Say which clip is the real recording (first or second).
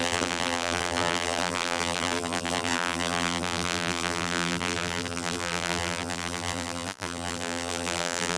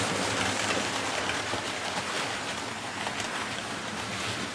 second